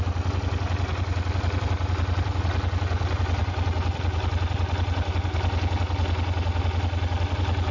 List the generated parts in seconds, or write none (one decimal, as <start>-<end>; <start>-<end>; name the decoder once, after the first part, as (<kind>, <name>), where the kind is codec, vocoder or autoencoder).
none